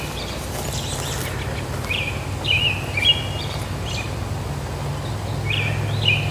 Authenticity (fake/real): real